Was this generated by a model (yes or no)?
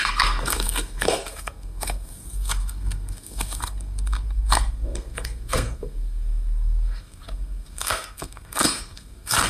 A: yes